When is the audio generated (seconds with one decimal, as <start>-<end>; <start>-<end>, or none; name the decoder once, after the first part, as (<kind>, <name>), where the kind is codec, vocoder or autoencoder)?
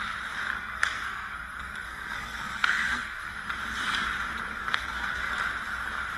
0.5-3.3 (codec, SNAC); 4.5-5.3